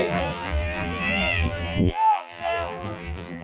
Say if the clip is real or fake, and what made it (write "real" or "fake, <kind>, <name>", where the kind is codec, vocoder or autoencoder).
fake, vocoder, BigVGAN v2